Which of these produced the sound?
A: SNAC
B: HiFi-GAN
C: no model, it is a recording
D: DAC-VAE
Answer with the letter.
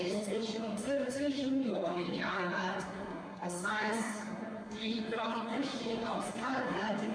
A